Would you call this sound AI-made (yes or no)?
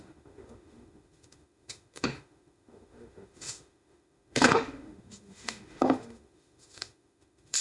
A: yes